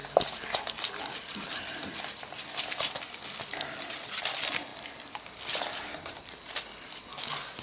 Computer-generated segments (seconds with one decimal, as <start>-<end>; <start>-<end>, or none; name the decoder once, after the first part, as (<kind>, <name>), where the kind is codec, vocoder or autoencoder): 0.0-6.7 (vocoder, BigVGAN v2)